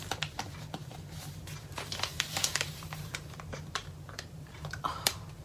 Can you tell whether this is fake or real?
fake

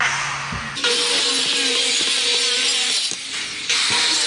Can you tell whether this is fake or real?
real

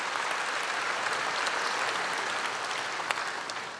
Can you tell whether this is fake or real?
real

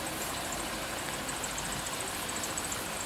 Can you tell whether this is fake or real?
fake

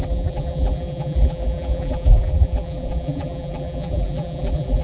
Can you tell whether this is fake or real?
fake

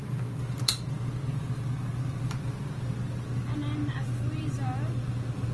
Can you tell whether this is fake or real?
real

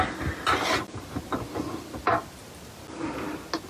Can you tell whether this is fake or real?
real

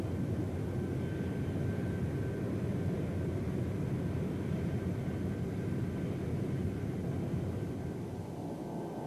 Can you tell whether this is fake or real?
real